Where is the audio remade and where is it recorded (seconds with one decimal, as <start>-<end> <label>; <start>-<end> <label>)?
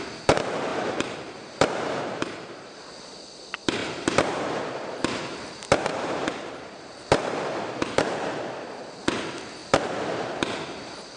0.0-0.7 recorded; 0.7-2.8 remade; 2.8-3.8 recorded; 3.8-8.8 remade; 8.8-9.6 recorded; 9.6-10.3 remade; 10.3-11.2 recorded